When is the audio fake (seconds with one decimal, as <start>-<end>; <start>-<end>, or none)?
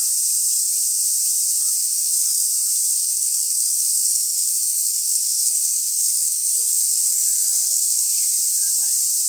1.8-2.5; 2.9-8.0